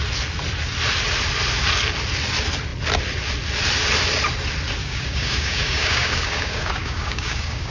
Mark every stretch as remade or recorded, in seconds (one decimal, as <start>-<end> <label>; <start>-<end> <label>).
0.0-4.8 recorded; 4.8-7.7 remade